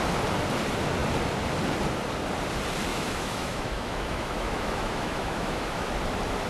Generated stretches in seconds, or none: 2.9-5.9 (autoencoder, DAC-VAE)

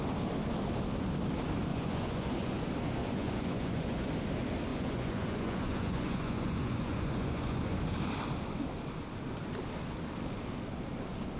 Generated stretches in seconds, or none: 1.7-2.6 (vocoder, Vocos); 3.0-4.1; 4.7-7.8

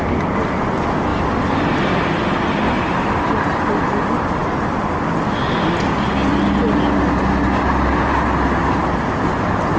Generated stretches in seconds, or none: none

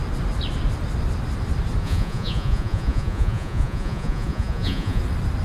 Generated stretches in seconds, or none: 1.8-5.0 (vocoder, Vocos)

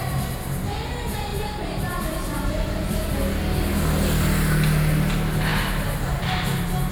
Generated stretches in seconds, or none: 1.3-3.1 (vocoder, BigVGAN v2)